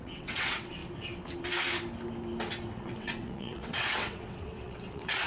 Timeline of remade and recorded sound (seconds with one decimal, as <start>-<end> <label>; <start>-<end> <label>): 0.0-0.8 remade; 0.8-2.7 recorded; 2.7-5.3 remade